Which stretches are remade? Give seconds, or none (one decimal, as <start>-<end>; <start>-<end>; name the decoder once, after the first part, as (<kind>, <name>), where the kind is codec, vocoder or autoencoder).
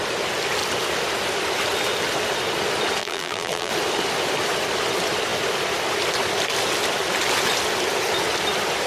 3.0-3.7 (vocoder, BigVGAN v2)